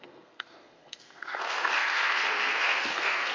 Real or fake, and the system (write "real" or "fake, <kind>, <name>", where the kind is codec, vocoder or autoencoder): fake, codec, SNAC